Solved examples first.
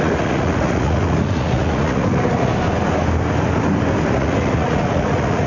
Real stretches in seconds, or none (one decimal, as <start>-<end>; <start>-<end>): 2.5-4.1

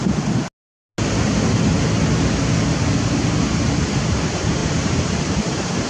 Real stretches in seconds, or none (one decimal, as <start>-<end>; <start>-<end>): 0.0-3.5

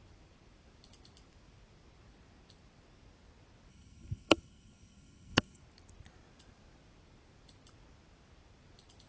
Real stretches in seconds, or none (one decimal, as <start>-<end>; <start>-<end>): 0.0-3.7; 5.6-9.1

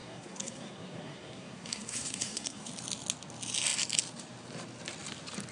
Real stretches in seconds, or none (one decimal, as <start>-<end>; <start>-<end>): 2.7-5.5

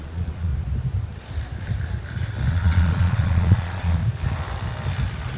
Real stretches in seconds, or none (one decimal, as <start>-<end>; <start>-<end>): 0.5-2.5; 4.0-5.4